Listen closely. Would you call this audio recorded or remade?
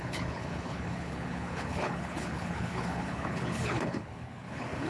remade